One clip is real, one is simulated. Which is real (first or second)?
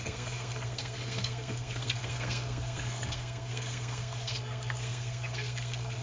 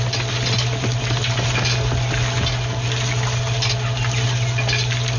second